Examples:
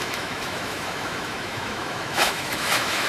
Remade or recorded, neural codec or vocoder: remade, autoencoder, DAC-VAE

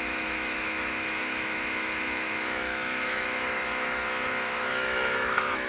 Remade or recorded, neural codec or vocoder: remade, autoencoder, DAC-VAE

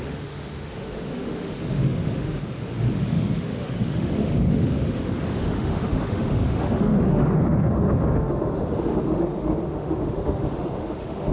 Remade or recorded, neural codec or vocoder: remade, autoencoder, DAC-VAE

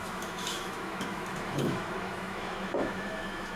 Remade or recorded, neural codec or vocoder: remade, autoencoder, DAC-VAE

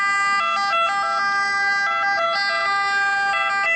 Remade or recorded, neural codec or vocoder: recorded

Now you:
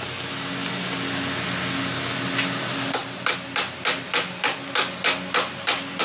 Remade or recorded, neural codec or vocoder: recorded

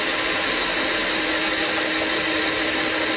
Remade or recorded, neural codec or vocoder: recorded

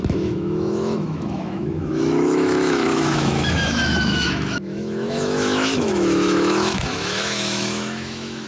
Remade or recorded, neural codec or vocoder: remade, autoencoder, DAC-VAE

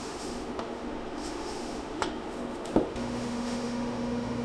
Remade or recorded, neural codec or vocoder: remade, autoencoder, DAC-VAE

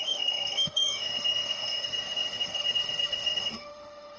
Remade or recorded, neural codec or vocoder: remade, autoencoder, DAC-VAE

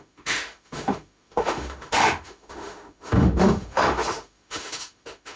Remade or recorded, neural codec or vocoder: remade, autoencoder, DAC-VAE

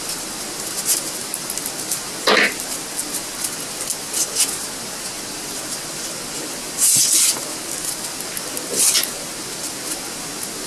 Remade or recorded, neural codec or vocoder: recorded